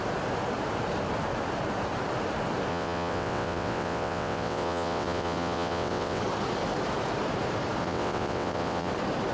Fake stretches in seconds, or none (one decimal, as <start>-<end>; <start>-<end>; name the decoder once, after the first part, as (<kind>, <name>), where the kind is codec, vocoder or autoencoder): 2.7-6.2 (vocoder, WaveNeXt); 7.8-8.9